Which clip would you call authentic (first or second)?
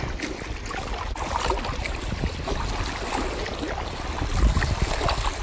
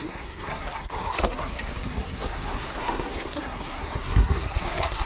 first